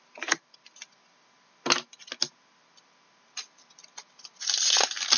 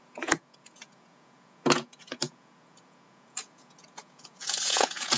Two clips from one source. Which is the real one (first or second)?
first